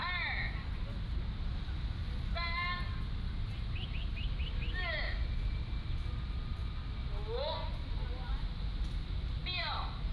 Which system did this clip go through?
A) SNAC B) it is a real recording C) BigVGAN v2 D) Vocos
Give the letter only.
B